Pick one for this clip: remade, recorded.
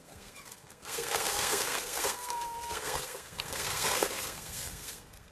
remade